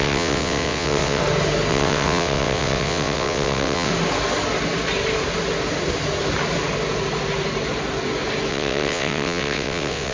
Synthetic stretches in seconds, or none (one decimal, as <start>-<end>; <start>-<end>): 0.0-1.2; 1.7-3.9; 8.5-10.1